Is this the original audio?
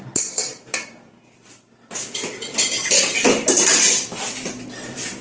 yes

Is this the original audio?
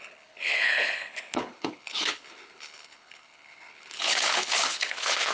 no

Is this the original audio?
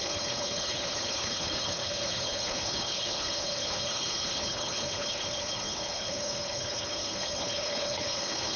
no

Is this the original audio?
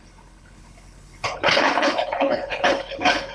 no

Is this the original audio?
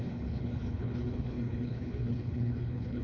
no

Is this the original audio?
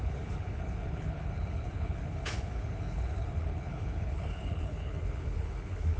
no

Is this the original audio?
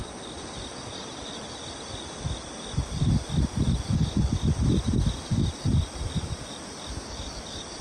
yes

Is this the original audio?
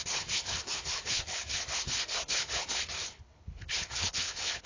no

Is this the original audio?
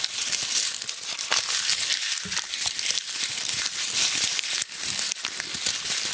yes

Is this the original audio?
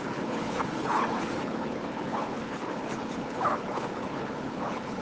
no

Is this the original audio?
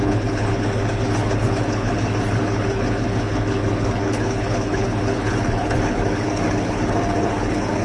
no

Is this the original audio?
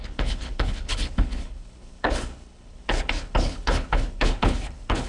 no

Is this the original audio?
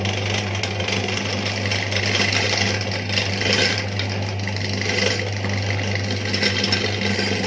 yes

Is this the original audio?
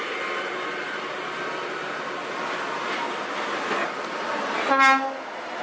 yes